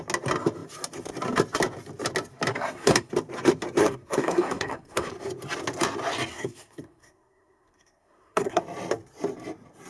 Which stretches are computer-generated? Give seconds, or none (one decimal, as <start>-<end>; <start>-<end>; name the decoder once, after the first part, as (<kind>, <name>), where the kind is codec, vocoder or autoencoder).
2.5-3.1 (codec, SNAC); 3.8-5.1; 6.3-8.6